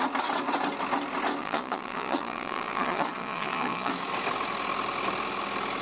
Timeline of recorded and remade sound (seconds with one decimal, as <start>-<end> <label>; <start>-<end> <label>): 0.0-1.4 recorded; 1.4-3.9 remade; 3.9-5.8 recorded